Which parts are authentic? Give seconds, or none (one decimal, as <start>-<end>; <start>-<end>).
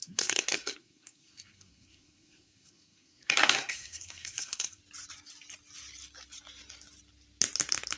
4.8-8.0